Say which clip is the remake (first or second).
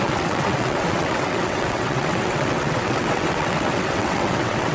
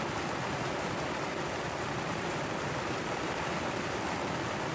first